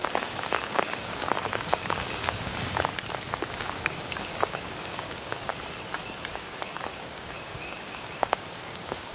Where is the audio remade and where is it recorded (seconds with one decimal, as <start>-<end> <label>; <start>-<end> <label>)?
0.0-2.9 remade; 2.9-3.5 recorded; 3.5-5.5 remade; 5.5-6.3 recorded; 6.3-9.1 remade